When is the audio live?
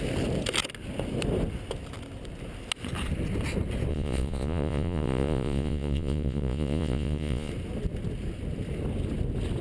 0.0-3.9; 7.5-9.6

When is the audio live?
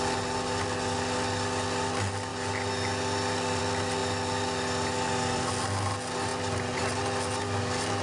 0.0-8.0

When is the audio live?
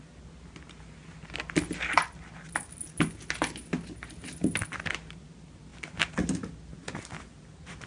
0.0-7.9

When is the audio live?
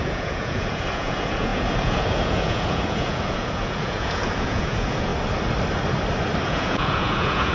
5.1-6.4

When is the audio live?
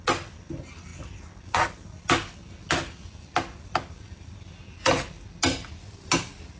0.0-6.6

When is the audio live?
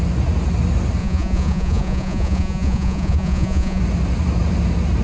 0.0-1.0; 3.8-5.0